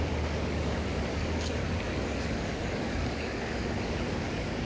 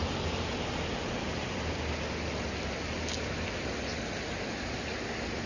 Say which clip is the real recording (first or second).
second